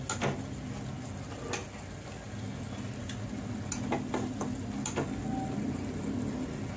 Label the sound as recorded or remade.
recorded